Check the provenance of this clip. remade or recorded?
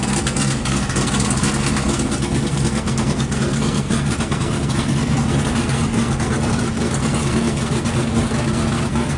remade